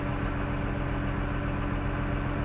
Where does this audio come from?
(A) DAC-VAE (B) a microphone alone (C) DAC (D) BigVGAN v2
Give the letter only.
B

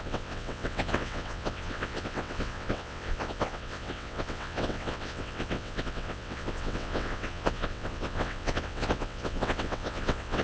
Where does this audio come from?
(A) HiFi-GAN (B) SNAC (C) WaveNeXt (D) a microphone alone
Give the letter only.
C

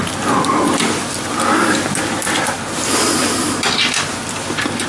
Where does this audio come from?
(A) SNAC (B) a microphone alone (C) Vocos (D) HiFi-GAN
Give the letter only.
B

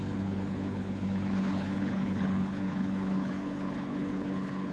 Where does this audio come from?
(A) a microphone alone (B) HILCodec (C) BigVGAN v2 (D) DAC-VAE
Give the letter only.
B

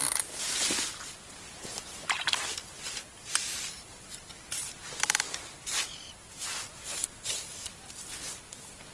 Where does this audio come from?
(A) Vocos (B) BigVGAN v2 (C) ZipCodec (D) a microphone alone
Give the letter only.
D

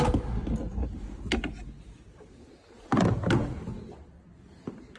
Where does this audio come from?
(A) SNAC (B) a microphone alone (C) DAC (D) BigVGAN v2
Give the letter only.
B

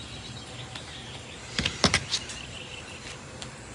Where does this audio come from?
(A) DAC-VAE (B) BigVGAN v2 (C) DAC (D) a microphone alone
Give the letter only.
B